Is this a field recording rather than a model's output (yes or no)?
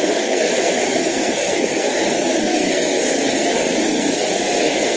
no